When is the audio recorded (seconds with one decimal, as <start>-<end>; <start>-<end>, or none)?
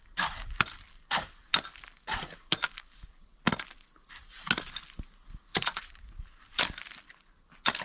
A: 0.0-5.5; 6.1-7.8